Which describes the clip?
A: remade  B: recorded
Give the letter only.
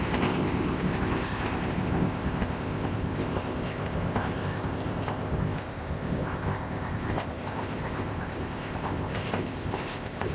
A